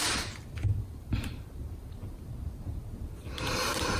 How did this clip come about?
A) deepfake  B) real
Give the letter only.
A